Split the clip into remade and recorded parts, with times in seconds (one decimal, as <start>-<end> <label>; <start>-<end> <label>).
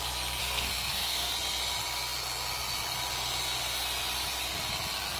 0.0-0.4 recorded; 0.4-1.3 remade; 1.3-5.2 recorded